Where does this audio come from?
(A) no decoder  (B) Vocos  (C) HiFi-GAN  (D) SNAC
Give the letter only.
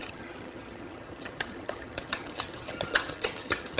C